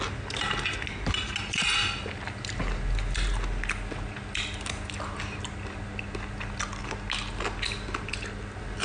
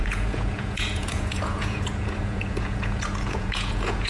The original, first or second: first